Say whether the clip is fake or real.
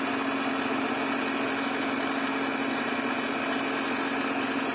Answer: real